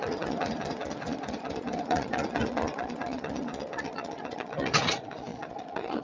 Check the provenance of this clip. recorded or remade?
remade